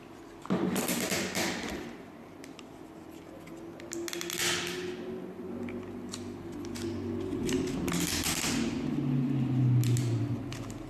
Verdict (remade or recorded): recorded